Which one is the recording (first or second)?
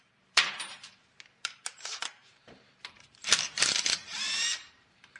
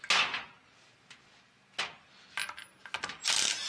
second